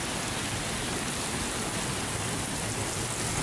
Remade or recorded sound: recorded